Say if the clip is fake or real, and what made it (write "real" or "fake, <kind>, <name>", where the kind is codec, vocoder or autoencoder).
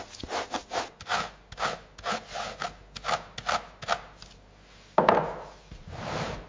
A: real